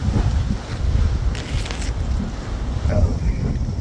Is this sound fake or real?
real